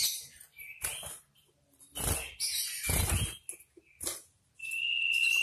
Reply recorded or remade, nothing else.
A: recorded